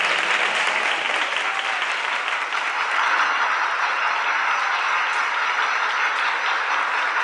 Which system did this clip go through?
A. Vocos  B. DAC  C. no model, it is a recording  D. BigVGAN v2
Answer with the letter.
C